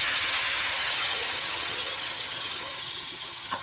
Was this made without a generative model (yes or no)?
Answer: no